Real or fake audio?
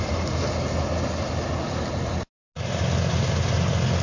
real